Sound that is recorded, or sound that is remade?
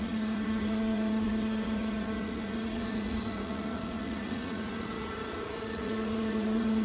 remade